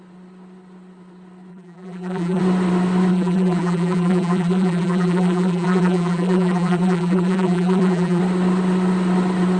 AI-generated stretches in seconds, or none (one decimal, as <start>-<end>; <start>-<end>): 1.5-2.4; 3.1-8.2